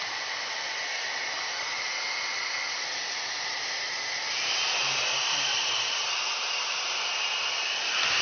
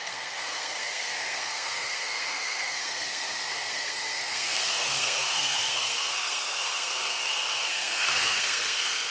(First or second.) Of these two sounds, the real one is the first